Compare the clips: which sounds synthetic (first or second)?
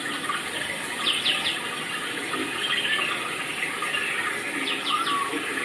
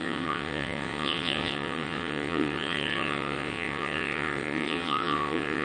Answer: second